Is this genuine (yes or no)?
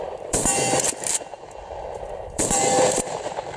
no